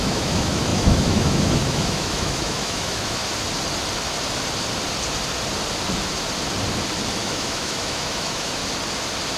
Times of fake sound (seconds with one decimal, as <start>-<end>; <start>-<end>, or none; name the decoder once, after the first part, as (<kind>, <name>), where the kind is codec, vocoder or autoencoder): 0.0-3.2 (autoencoder, DAC-VAE); 7.1-8.6